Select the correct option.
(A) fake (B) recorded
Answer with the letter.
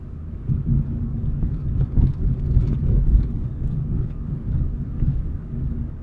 A